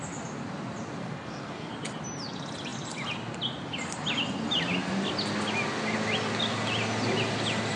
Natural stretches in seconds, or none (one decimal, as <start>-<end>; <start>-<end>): 0.0-1.0; 1.7-7.8